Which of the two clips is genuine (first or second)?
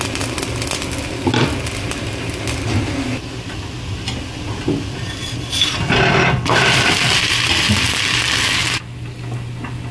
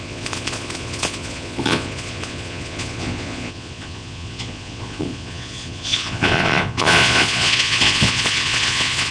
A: first